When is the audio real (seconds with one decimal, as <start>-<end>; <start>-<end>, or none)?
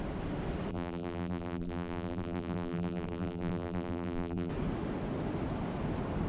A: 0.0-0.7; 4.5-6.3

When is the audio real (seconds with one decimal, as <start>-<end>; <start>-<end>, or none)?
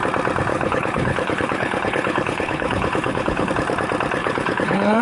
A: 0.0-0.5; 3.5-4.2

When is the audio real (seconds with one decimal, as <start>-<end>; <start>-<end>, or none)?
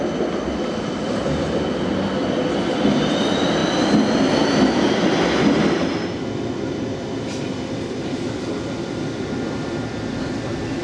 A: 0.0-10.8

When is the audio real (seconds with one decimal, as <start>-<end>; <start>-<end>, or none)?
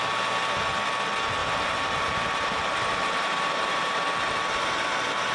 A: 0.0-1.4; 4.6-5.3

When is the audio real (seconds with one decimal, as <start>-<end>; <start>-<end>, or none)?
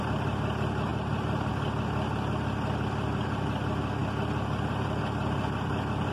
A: 0.0-0.9; 1.5-6.1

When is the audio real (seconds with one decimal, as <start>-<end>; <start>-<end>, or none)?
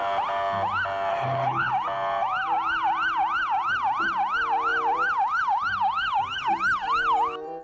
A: 0.0-1.1; 1.7-7.6